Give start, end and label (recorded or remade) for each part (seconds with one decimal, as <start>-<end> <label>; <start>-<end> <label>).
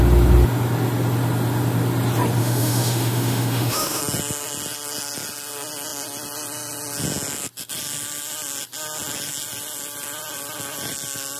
0.0-2.4 recorded; 2.4-4.0 remade; 4.0-11.4 recorded